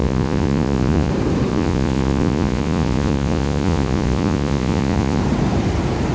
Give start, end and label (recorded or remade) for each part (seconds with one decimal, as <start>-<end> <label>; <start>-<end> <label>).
0.0-1.1 remade; 1.1-1.5 recorded; 1.5-5.2 remade; 5.2-6.1 recorded